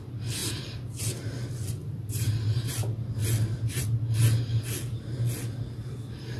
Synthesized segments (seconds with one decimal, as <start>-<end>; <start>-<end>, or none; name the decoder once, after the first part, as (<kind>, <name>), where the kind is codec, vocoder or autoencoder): 1.8-2.7 (vocoder, BigVGAN v2)